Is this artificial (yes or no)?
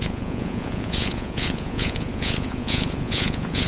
yes